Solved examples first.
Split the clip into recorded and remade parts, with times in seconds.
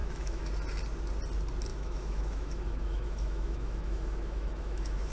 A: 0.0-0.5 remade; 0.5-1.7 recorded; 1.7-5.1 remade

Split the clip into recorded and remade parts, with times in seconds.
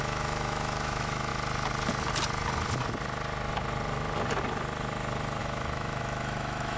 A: 0.0-1.3 remade; 1.3-5.4 recorded; 5.4-6.8 remade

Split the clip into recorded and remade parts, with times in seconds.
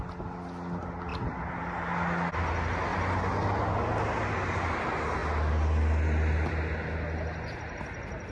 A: 0.0-8.3 recorded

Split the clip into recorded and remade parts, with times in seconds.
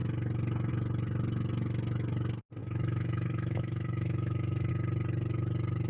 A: 0.0-2.6 recorded; 2.6-4.7 remade; 4.7-5.9 recorded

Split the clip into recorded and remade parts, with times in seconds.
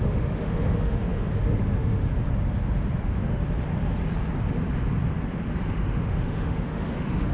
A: 0.0-2.1 remade; 2.1-3.0 recorded; 3.0-3.4 remade; 3.4-5.6 recorded; 5.6-7.3 remade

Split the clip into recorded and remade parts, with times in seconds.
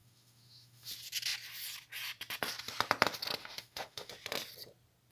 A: 0.0-0.9 remade; 0.9-3.4 recorded; 3.4-4.1 remade; 4.1-5.1 recorded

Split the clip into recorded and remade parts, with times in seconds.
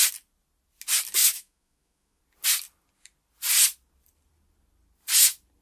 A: 0.0-1.2 recorded; 1.2-2.2 remade; 2.2-5.6 recorded